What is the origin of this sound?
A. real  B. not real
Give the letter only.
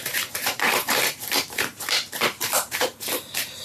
B